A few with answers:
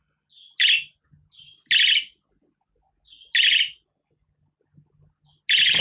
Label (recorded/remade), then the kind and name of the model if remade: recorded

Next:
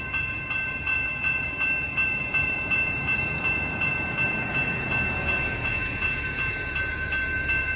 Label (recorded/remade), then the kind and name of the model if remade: remade, vocoder, Vocos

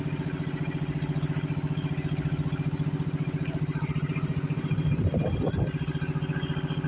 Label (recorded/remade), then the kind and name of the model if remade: recorded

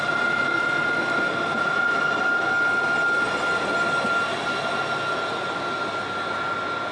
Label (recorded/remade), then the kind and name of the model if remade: recorded